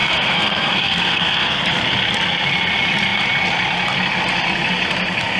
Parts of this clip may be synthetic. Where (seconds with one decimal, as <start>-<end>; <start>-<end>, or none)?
0.0-1.6